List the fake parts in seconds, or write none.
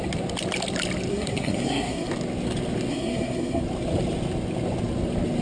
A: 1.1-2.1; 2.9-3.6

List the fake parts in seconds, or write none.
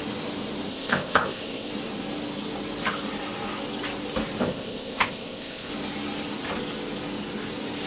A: 0.7-1.7; 4.4-5.7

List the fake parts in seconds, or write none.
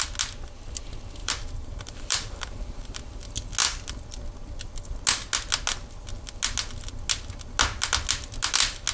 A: 1.2-3.0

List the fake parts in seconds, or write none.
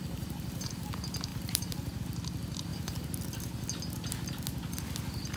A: 0.0-0.7; 1.3-2.0; 2.7-3.2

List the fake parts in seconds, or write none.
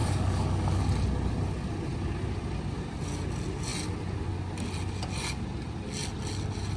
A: 0.0-0.9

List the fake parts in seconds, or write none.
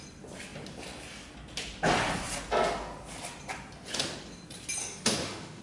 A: 4.8-5.6